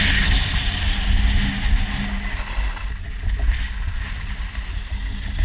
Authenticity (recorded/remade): recorded